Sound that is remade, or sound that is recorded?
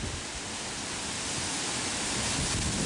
recorded